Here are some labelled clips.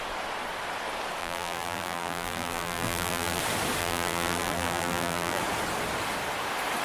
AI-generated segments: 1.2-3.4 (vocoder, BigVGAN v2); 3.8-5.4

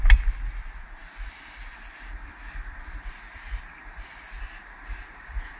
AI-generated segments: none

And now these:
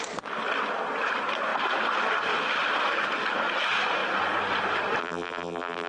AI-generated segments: 5.0-5.9 (vocoder, BigVGAN v2)